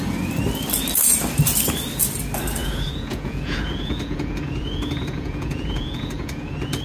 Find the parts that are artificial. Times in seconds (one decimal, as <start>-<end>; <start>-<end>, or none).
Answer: 2.6-6.8